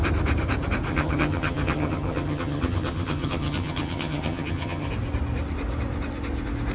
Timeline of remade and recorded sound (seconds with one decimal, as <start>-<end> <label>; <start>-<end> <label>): 0.0-0.9 recorded; 0.9-4.9 remade; 4.9-6.7 recorded